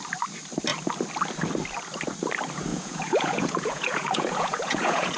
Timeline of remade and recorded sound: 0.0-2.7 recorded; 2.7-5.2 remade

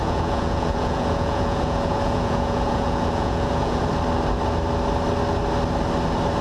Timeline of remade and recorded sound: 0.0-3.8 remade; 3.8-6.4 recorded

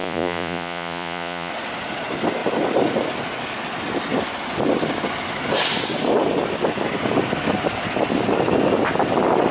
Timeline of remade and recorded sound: 0.0-1.5 remade; 1.5-9.5 recorded